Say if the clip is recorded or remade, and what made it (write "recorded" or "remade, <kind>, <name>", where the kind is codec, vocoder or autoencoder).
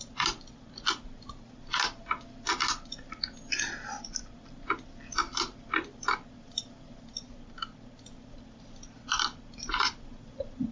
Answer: recorded